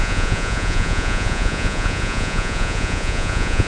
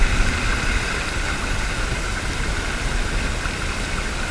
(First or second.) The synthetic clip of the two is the first